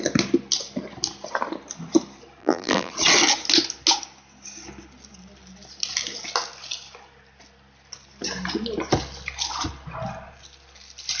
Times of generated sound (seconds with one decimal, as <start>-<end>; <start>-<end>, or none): 2.4-2.9